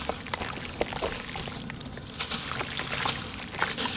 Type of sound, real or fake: real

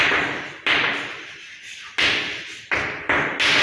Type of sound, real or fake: real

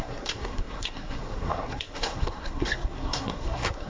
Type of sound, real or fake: fake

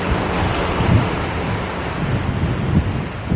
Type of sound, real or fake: real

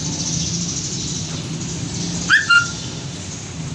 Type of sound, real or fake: real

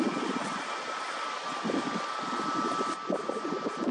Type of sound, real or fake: real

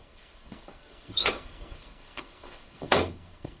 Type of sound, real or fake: fake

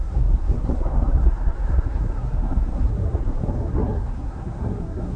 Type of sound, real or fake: fake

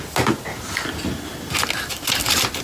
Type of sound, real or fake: real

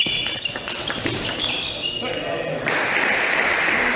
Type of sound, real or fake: real